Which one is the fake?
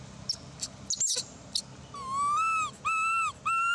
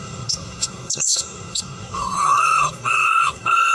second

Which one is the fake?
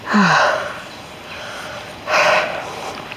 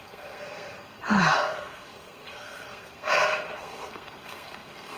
second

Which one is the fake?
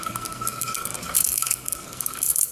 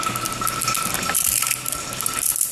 first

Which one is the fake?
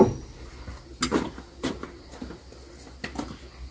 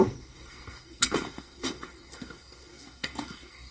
second